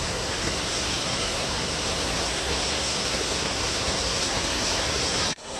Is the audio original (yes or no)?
no